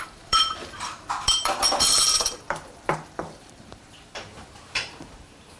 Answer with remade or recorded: remade